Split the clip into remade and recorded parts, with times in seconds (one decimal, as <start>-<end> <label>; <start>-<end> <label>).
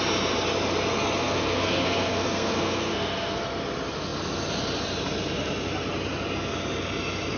0.0-1.2 recorded; 1.2-3.4 remade; 3.4-7.4 recorded